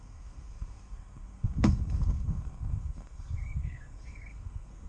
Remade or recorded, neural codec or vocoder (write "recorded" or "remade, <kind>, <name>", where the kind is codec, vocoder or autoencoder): remade, codec, SNAC